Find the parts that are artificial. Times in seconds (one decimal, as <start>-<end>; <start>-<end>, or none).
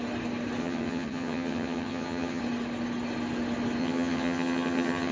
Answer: 0.6-2.4; 3.8-5.1